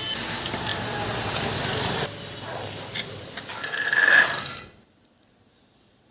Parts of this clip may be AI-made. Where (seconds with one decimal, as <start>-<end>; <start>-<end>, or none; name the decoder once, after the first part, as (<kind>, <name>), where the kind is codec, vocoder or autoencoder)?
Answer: none